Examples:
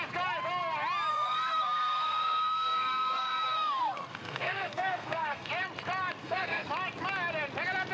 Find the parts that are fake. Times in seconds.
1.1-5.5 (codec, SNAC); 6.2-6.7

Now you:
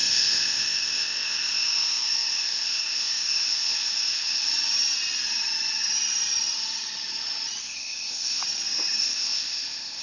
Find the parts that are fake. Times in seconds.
0.0-4.5 (codec, ZipCodec); 7.6-8.4; 9.0-10.0

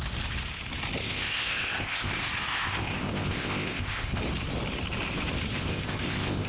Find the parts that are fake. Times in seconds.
1.0-2.1 (codec, ZipCodec); 2.5-4.2; 5.6-6.5

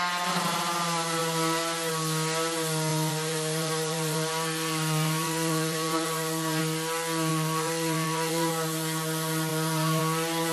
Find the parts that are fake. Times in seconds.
2.9-6.6 (vocoder, BigVGAN v2); 7.3-8.5; 9.5-10.0